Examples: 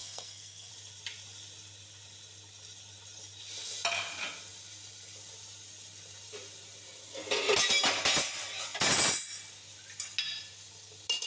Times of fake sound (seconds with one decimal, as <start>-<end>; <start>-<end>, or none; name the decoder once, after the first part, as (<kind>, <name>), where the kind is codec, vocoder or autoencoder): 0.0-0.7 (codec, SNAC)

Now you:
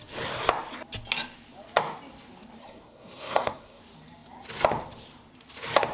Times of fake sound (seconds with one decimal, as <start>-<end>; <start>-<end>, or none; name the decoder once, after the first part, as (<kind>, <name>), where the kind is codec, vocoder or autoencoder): 2.6-3.8 (codec, SNAC)

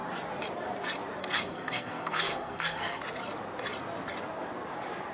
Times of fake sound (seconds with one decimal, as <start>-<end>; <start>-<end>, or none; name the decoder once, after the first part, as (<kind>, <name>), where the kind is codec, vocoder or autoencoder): 1.2-3.0 (codec, SNAC)